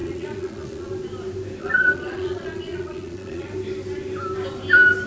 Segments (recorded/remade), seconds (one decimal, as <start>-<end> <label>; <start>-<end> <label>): 0.0-0.9 remade; 0.9-1.6 recorded; 1.6-3.5 remade; 3.5-5.1 recorded